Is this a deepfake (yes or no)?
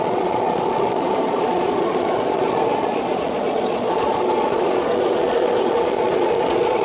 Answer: yes